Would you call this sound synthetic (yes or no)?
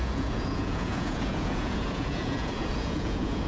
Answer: yes